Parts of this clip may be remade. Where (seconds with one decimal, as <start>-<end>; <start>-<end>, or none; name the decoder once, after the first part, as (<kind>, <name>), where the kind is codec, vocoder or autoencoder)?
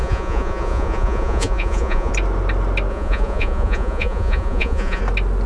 0.0-2.1 (vocoder, Vocos); 2.9-5.0